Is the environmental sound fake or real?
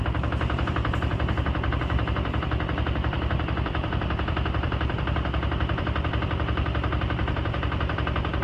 fake